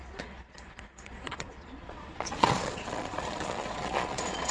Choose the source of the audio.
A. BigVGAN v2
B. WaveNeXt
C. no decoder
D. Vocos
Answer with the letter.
D